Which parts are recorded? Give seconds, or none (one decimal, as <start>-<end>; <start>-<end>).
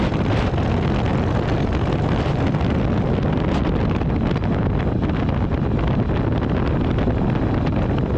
0.0-8.2